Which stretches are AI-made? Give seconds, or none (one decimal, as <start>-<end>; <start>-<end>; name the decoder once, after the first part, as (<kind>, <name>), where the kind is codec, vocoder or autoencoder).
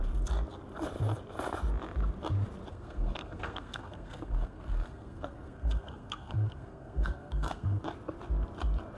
2.7-7.8 (codec, SNAC)